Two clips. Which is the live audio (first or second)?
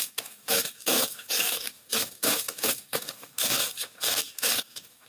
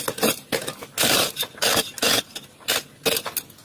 second